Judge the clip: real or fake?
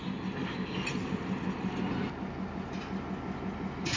real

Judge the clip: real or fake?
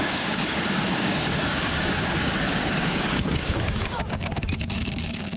fake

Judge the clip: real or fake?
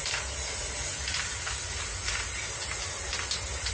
real